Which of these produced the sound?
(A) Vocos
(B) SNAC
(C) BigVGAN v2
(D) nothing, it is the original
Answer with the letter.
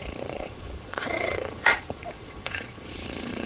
A